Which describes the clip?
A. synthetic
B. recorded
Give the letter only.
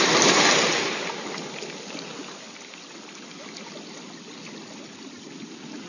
B